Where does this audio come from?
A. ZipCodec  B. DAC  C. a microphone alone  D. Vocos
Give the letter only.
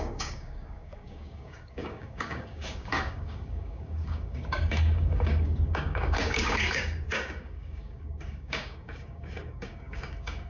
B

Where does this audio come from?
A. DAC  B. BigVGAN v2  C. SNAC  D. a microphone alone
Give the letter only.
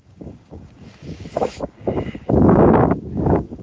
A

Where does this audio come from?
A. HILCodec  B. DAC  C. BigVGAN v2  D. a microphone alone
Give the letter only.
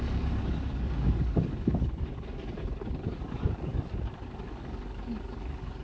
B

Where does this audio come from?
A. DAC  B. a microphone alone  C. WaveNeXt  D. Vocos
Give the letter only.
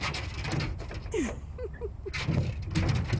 B